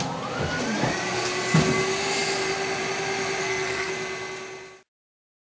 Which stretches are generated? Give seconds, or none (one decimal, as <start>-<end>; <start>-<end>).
3.4-3.9